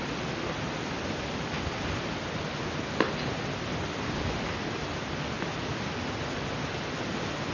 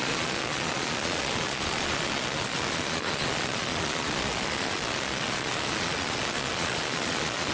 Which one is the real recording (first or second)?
first